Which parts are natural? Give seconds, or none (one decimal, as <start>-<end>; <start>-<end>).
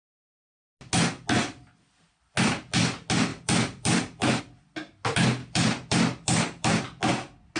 0.0-3.3; 4.4-5.4; 7.0-7.6